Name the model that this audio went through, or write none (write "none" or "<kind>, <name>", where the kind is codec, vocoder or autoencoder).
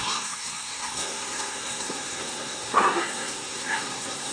codec, SNAC